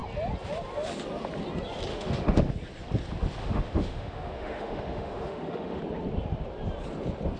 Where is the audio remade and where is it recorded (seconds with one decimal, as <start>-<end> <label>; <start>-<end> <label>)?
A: 0.0-1.9 recorded; 1.9-2.5 remade; 2.5-3.4 recorded; 3.4-5.8 remade; 5.8-7.4 recorded